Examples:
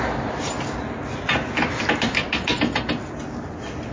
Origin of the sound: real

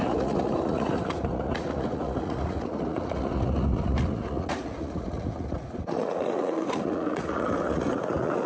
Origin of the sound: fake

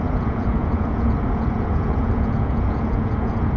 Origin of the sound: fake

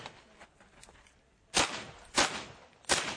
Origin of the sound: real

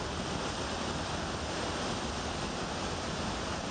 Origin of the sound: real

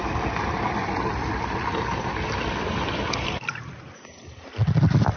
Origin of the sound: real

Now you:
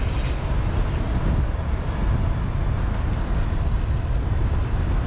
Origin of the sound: real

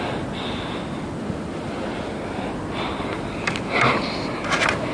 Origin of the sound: real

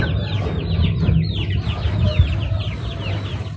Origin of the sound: real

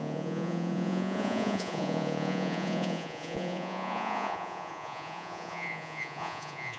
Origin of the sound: fake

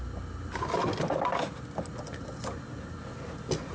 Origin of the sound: real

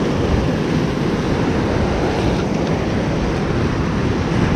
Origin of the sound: real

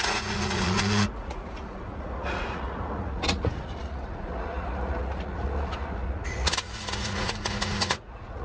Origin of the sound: fake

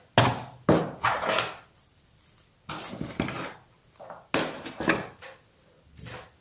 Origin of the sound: real